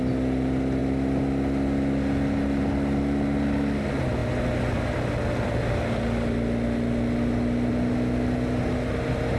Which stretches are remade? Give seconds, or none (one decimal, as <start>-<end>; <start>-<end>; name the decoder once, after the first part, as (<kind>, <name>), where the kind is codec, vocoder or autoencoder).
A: none